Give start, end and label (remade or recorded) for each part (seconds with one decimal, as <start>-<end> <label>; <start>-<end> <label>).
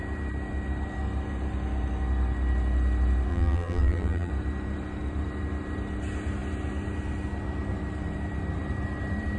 0.0-3.3 recorded; 3.3-4.3 remade; 4.3-9.4 recorded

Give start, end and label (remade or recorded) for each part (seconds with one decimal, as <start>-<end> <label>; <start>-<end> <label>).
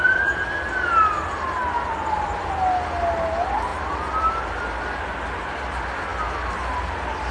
0.0-7.3 recorded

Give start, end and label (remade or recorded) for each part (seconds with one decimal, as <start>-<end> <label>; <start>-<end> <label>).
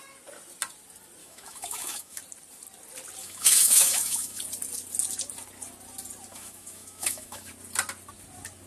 0.0-1.2 recorded; 1.2-2.2 remade; 2.2-3.2 recorded; 3.2-4.4 remade; 4.4-6.3 recorded; 6.3-7.5 remade; 7.5-8.7 recorded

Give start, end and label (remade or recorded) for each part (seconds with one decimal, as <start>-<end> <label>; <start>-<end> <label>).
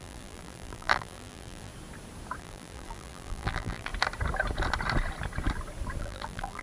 0.0-1.7 remade; 1.7-2.4 recorded; 2.4-3.9 remade; 3.9-6.0 recorded; 6.0-6.6 remade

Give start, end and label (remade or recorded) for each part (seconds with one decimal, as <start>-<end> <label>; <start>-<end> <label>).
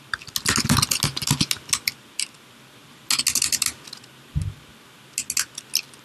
0.0-6.0 recorded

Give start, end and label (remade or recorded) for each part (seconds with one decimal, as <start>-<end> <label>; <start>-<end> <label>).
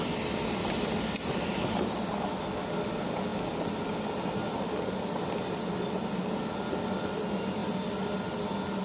0.0-8.8 recorded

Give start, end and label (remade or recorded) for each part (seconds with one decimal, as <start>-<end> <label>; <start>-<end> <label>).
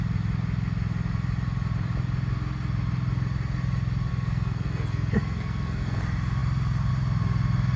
0.0-4.1 recorded; 4.1-6.0 remade; 6.0-7.8 recorded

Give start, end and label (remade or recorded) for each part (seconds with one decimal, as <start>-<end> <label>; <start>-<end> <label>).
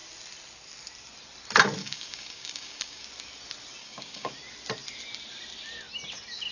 0.0-1.8 recorded; 1.8-3.0 remade; 3.0-3.8 recorded; 3.8-4.3 remade; 4.3-6.5 recorded